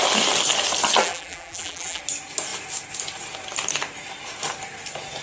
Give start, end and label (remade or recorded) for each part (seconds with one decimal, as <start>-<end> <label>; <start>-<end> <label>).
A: 0.0-1.0 recorded; 1.0-2.0 remade; 2.0-5.2 recorded